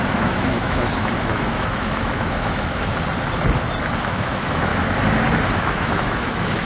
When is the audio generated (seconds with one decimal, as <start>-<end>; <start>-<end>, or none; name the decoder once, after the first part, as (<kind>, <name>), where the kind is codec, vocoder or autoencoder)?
0.0-2.9 (autoencoder, DAC-VAE); 4.0-4.7; 5.6-6.6